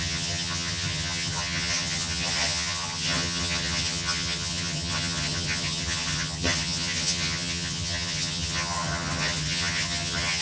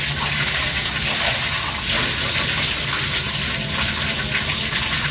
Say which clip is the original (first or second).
second